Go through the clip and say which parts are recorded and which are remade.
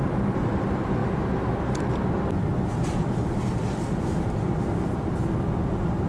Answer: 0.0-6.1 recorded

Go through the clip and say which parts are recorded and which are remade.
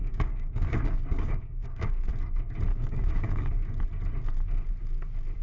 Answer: 0.0-2.1 remade; 2.1-2.7 recorded; 2.7-3.5 remade; 3.5-5.4 recorded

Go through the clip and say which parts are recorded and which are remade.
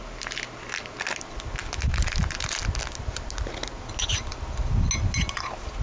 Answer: 0.0-5.8 recorded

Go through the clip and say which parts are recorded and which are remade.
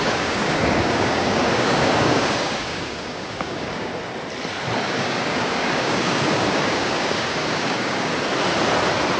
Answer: 0.0-3.9 remade; 3.9-4.8 recorded; 4.8-8.1 remade; 8.1-9.2 recorded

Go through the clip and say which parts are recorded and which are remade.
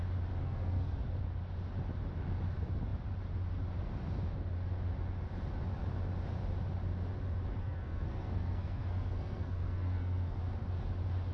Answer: 0.0-0.4 recorded; 0.4-1.0 remade; 1.0-7.6 recorded; 7.6-10.4 remade; 10.4-11.3 recorded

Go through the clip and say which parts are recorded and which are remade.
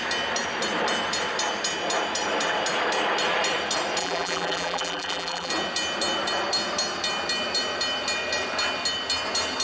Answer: 0.0-4.0 recorded; 4.0-5.5 remade; 5.5-9.6 recorded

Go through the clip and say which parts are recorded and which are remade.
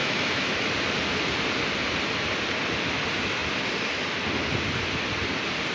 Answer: 0.0-0.7 remade; 0.7-5.7 recorded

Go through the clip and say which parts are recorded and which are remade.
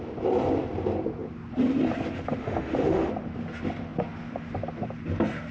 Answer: 0.0-2.4 recorded; 2.4-3.1 remade; 3.1-5.5 recorded